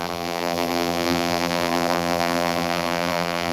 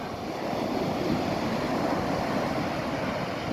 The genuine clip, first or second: second